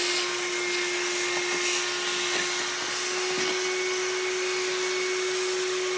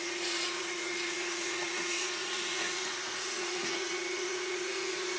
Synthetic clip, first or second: second